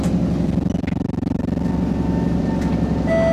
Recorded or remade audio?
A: recorded